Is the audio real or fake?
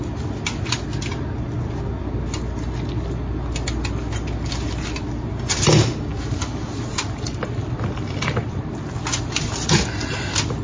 real